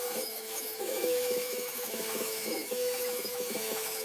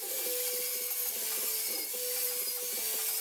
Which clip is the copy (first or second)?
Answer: first